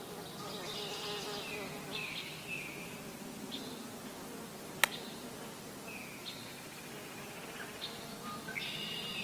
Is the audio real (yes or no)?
yes